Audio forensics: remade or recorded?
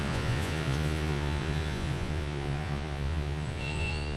remade